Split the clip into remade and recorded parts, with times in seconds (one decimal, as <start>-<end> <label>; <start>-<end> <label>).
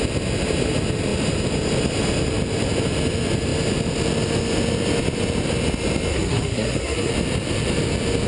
0.0-6.1 recorded; 6.1-7.1 remade; 7.1-8.3 recorded